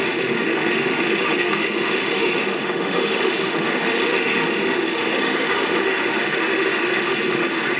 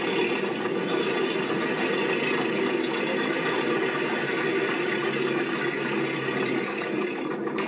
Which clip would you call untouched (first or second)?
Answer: second